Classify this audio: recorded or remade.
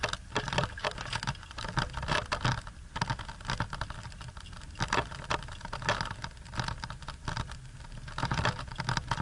recorded